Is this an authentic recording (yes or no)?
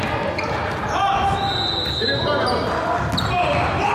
yes